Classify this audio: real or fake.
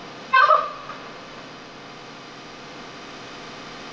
fake